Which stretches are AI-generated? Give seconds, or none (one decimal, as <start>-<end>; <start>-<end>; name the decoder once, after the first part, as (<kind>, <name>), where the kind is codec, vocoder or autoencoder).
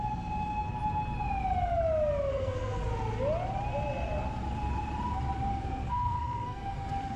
2.3-2.8 (codec, SNAC); 5.5-7.2